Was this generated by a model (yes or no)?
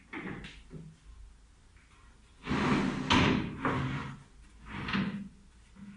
no